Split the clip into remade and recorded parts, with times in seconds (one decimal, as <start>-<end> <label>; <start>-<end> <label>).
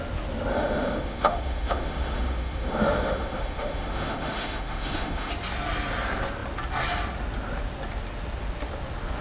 0.0-0.5 recorded; 0.5-5.3 remade; 5.3-9.2 recorded